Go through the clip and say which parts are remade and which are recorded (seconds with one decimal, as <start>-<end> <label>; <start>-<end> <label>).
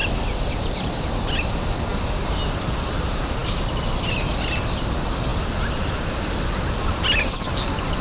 0.0-8.0 recorded